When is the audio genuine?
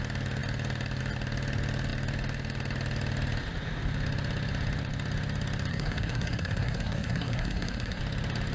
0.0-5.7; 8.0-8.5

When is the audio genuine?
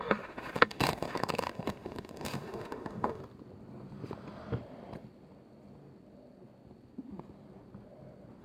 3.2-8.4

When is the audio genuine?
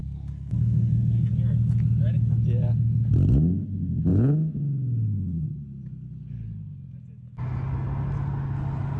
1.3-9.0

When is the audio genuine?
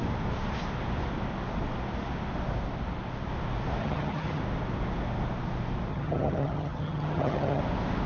0.0-3.8; 4.4-5.9; 7.6-8.1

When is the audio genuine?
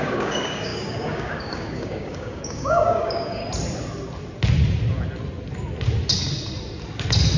3.4-7.4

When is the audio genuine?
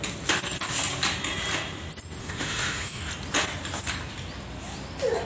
0.0-2.2; 3.1-5.2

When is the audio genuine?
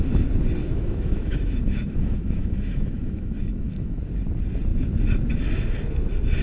0.0-0.6; 4.0-6.4